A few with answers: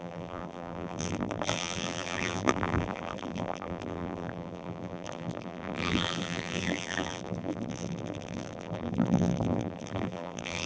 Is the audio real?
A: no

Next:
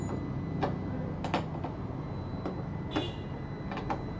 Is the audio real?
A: yes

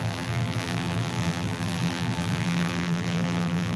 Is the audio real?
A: no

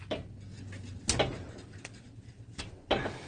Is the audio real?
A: yes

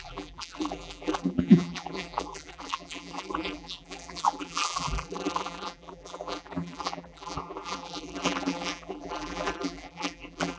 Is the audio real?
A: no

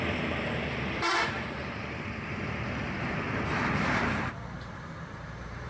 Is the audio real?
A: no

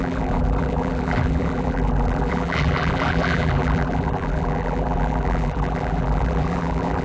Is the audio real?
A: no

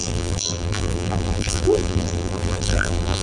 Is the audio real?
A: no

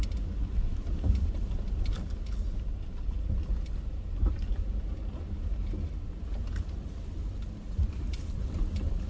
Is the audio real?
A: yes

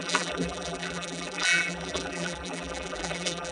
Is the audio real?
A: no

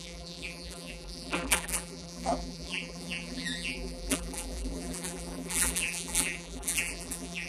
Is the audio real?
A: no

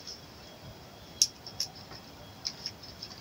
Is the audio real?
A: yes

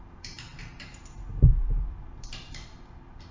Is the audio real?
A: no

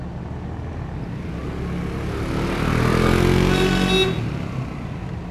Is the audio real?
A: yes